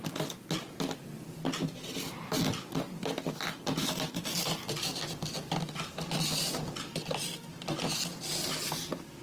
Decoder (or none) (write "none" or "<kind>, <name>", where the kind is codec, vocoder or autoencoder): none